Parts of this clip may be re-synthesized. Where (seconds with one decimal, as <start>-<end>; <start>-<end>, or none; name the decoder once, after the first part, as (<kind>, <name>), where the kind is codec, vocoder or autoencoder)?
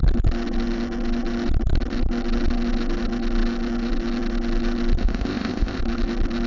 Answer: 5.0-5.8 (codec, ZipCodec)